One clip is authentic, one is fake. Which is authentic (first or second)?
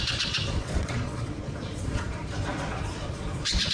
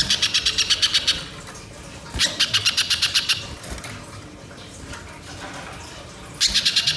second